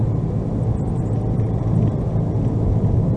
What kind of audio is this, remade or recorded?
recorded